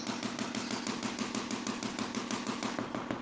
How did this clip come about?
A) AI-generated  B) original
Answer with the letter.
B